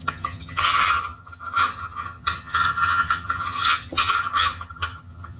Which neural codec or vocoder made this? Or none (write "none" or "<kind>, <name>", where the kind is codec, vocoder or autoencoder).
vocoder, HiFi-GAN